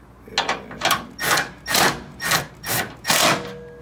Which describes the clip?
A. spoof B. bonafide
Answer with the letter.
B